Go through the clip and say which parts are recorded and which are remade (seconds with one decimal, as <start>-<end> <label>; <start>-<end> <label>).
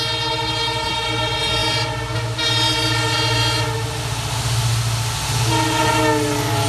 0.0-6.7 recorded